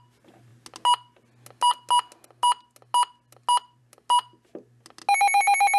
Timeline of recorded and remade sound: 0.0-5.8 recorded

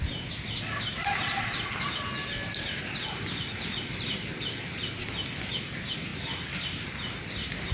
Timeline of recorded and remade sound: 0.0-7.7 recorded

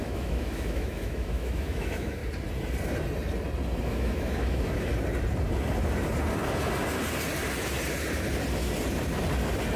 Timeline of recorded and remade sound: 0.0-2.2 remade; 2.2-3.8 recorded; 3.8-4.9 remade; 4.9-9.8 recorded

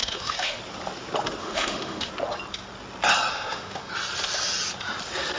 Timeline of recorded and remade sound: 0.0-0.6 remade; 0.6-1.4 recorded; 1.4-2.1 remade; 2.1-3.3 recorded; 3.3-3.9 remade; 3.9-5.4 recorded

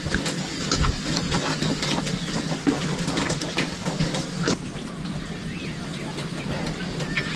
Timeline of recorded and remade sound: 0.0-7.4 recorded

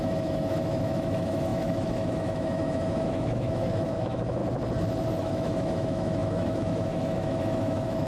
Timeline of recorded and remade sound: 0.0-4.4 remade; 4.4-5.2 recorded; 5.2-8.1 remade

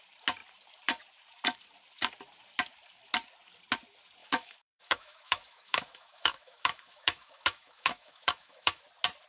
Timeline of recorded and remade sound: 0.0-4.2 recorded; 4.2-8.8 remade; 8.8-9.3 recorded